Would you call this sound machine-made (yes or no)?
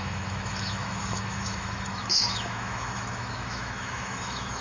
yes